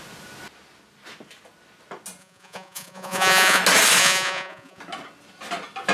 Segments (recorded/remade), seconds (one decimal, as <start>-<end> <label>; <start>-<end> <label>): 0.0-2.2 recorded; 2.2-3.6 remade; 3.6-4.0 recorded; 4.0-4.8 remade; 4.8-5.9 recorded